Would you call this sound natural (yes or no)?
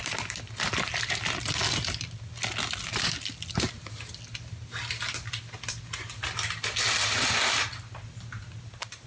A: yes